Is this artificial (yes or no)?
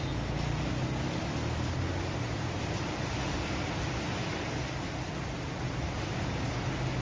no